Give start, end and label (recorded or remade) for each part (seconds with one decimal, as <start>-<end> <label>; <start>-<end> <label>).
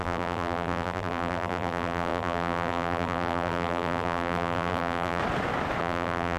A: 0.0-5.2 remade; 5.2-5.8 recorded; 5.8-6.4 remade